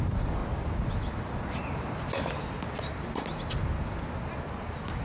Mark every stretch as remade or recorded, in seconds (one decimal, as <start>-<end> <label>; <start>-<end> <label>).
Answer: 0.0-5.0 recorded